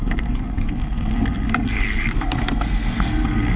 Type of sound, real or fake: fake